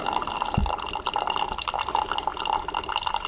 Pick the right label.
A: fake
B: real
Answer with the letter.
B